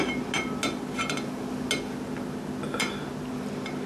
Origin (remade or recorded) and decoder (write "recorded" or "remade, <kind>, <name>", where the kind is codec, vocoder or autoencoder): recorded